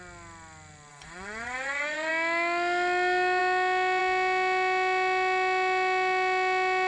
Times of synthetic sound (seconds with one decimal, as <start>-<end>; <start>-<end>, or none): 0.9-2.1